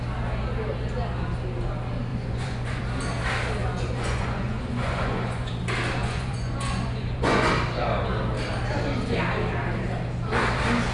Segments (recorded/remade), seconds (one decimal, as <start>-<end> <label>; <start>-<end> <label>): 0.0-2.1 recorded; 2.1-2.8 remade; 2.8-3.6 recorded; 3.6-5.5 remade; 5.5-6.0 recorded; 6.0-7.5 remade; 7.5-10.9 recorded